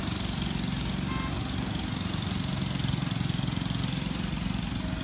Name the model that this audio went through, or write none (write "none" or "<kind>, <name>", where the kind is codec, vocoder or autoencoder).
none